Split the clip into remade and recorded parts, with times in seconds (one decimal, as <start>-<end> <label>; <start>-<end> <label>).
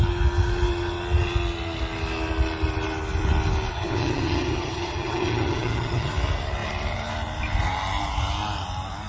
0.0-3.7 recorded; 3.7-6.1 remade; 6.1-9.1 recorded